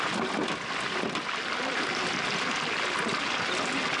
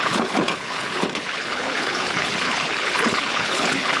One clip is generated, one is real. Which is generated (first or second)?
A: second